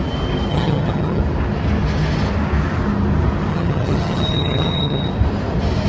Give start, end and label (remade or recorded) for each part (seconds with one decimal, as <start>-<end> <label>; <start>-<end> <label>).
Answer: 0.0-0.5 recorded; 0.5-1.2 remade; 1.2-3.5 recorded; 3.5-5.1 remade; 5.1-5.9 recorded